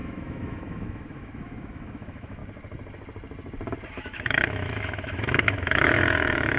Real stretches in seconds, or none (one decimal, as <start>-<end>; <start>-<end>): 2.4-3.9